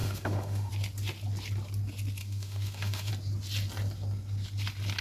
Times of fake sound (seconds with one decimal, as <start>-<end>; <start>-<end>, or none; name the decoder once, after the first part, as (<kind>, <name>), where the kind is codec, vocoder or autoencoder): 0.0-0.7 (autoencoder, DAC-VAE); 2.2-3.1

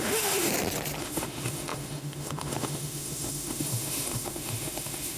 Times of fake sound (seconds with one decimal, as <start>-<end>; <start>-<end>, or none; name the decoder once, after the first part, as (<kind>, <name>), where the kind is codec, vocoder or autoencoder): 0.0-0.5 (autoencoder, DAC-VAE); 1.0-5.2

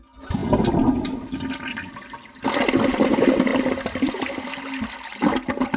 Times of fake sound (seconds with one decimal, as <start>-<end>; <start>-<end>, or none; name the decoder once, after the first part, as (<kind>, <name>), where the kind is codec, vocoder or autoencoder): none

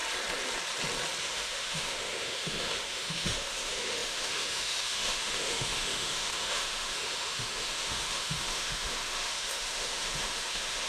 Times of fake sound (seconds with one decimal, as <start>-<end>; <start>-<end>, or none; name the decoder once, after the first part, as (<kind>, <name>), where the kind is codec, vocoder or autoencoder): 1.2-10.9 (autoencoder, DAC-VAE)